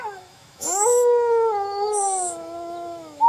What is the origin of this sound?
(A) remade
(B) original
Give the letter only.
A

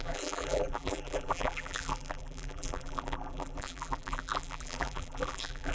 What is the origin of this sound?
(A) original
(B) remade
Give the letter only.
B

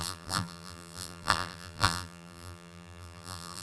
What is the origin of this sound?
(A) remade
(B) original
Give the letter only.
A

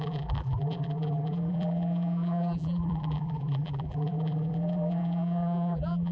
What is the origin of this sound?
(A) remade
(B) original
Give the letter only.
A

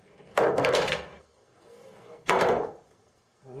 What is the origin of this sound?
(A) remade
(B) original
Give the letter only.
A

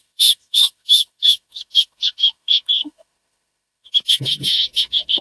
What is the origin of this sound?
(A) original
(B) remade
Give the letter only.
B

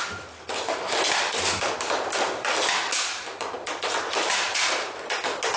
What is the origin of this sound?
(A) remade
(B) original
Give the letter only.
B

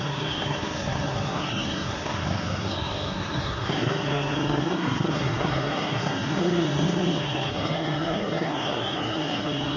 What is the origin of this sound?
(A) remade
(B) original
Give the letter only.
A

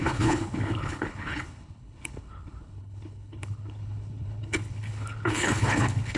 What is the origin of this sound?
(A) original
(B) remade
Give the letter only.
B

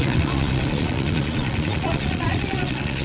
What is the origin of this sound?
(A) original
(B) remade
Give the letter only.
B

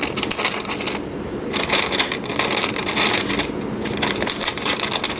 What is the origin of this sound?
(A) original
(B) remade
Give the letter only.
A